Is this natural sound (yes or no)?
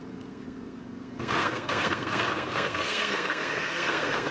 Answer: no